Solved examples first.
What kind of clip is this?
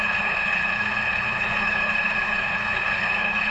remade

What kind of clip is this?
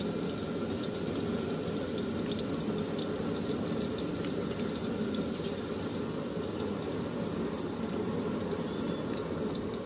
recorded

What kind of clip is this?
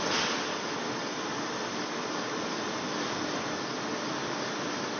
recorded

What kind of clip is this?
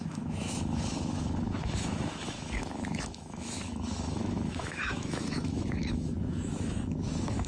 remade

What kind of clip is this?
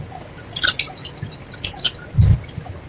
recorded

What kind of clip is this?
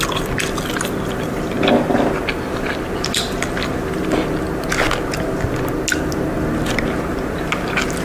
recorded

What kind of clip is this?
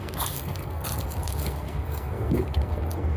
remade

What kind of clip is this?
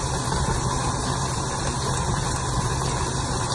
recorded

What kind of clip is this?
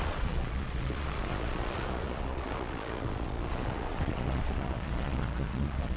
remade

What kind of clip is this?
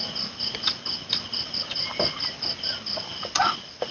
recorded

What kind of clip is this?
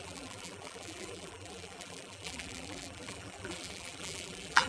remade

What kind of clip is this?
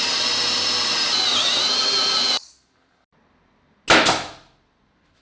recorded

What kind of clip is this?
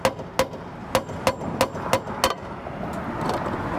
recorded